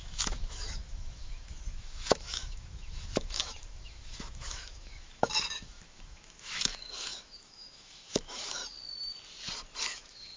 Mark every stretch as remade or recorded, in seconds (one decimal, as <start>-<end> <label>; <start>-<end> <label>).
0.0-8.6 remade; 8.6-9.8 recorded; 9.8-10.4 remade